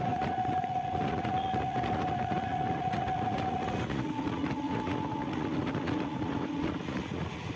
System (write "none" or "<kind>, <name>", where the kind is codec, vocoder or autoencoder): vocoder, Vocos